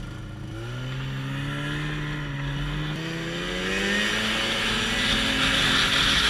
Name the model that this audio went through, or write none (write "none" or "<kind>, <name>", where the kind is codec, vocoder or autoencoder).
none